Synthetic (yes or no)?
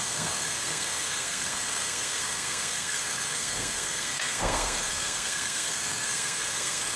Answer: yes